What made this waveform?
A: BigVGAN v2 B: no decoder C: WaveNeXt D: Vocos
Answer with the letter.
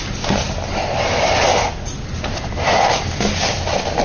B